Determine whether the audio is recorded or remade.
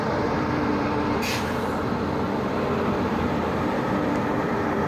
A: remade